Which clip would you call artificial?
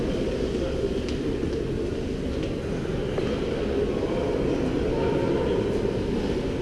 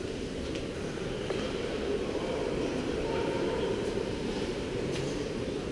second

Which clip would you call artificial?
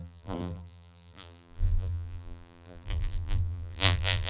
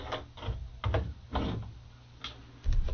first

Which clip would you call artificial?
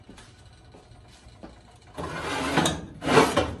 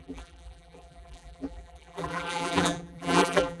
second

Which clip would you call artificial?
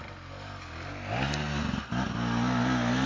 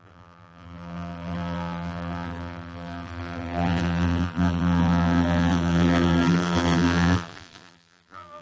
second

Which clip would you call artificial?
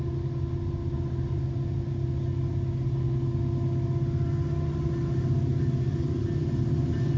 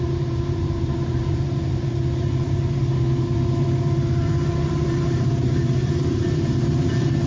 second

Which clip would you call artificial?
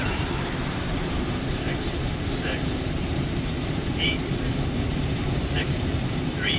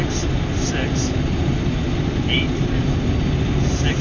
first